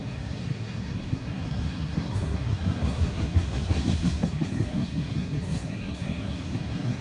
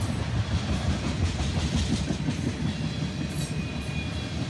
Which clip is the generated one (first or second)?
first